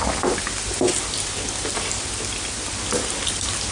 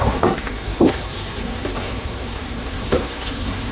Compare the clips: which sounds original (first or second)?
first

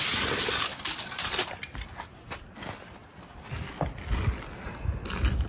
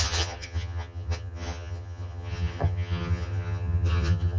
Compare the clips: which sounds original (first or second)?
first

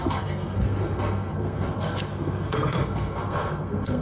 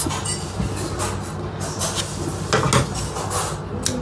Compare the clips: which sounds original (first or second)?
second